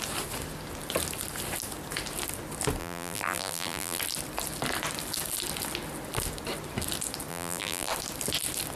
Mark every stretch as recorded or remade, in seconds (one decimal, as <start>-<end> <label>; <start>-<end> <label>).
0.0-2.8 recorded; 2.8-4.0 remade; 4.0-7.3 recorded; 7.3-7.9 remade; 7.9-8.8 recorded